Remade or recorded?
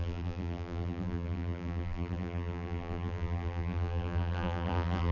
remade